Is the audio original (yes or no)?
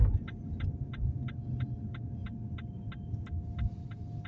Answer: yes